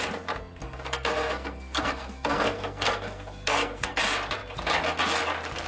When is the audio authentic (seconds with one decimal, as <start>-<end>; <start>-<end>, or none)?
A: 0.0-0.6; 4.0-5.7